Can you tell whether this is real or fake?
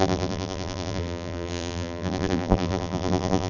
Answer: fake